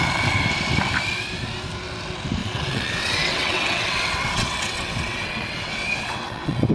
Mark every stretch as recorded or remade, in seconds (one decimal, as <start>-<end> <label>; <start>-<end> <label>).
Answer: 0.0-2.4 recorded; 2.4-6.7 remade